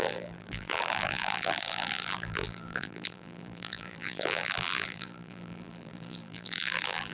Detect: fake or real fake